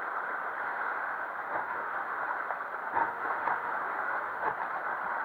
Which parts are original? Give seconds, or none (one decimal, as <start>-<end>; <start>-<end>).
0.0-0.6; 2.3-3.0; 4.5-5.2